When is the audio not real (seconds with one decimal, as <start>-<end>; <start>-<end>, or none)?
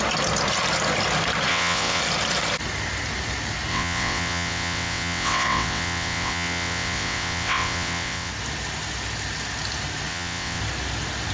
1.5-2.0; 3.7-8.3; 10.1-10.6